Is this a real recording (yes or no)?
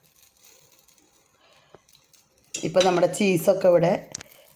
yes